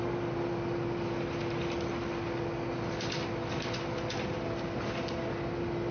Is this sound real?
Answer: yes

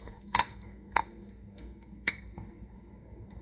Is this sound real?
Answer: no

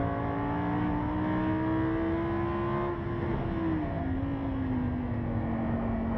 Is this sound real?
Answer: yes